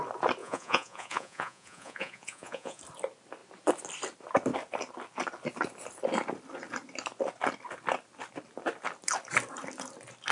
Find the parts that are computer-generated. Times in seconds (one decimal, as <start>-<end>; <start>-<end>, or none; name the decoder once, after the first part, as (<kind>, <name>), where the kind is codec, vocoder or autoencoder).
0.4-2.8 (vocoder, Vocos)